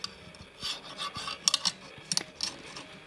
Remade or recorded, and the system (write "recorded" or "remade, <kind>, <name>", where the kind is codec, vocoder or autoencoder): recorded